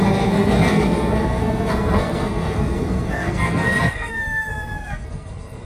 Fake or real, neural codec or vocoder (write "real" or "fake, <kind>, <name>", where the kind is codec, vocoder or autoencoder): fake, codec, SNAC